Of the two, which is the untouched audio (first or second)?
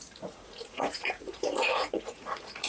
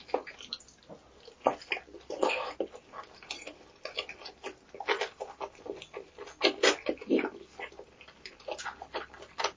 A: second